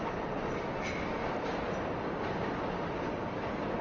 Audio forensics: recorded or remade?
recorded